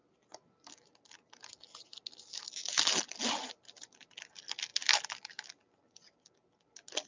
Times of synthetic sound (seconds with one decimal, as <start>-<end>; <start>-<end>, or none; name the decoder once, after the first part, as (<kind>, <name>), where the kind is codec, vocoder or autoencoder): none